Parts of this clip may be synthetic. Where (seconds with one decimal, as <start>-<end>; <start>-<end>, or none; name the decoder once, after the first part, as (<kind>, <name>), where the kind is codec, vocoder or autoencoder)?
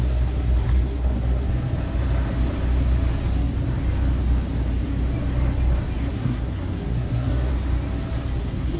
0.0-1.5 (codec, SNAC); 6.1-7.5; 8.4-8.8